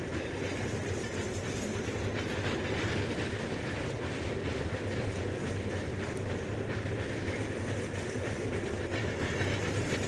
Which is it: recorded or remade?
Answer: recorded